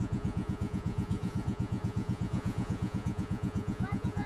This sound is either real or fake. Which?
fake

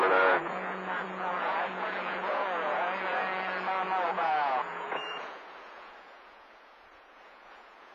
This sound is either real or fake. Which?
fake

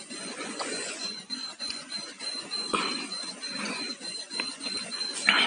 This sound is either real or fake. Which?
fake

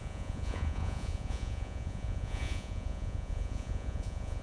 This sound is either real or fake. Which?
fake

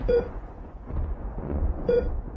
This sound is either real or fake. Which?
fake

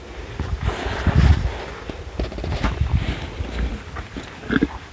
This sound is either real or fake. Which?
real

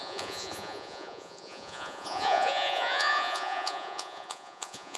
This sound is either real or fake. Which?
fake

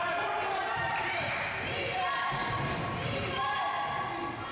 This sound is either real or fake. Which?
real